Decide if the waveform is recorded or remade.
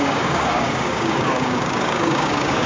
remade